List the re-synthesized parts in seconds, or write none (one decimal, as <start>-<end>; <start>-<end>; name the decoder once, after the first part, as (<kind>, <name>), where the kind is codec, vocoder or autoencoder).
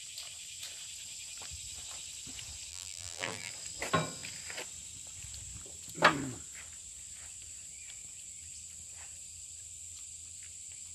2.7-3.5 (vocoder, BigVGAN v2)